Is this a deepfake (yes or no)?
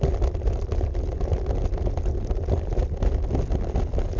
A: no